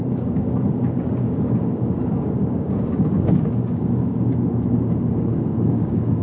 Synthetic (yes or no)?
yes